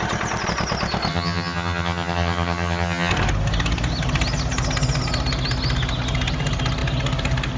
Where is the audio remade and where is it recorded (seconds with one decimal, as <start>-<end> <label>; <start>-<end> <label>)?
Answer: 0.0-1.1 recorded; 1.1-3.1 remade; 3.1-7.6 recorded